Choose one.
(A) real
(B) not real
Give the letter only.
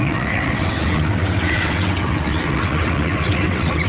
B